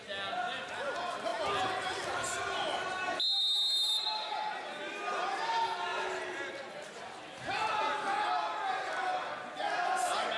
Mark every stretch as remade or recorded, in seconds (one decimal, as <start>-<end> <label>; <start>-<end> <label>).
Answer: 0.0-10.4 recorded